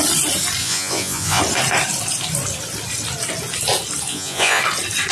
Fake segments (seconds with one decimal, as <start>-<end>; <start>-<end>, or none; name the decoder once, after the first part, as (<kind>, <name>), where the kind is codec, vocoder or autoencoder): 0.6-1.4 (vocoder, Vocos); 4.1-4.6